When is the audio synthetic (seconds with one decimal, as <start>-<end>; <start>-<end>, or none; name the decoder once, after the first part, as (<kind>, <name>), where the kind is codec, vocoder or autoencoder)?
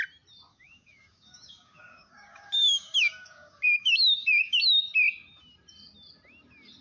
0.5-4.6 (codec, DAC)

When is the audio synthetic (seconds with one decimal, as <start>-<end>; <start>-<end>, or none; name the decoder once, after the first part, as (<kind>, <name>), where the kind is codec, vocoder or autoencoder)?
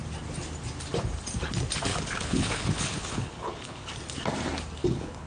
1.9-3.9 (codec, HILCodec); 4.8-5.3